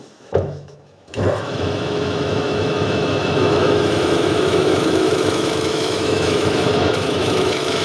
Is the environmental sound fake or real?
fake